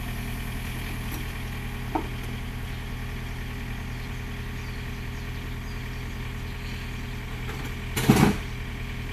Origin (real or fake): real